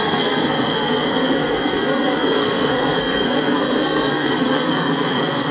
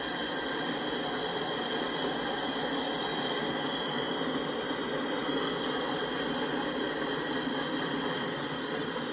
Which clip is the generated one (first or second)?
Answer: first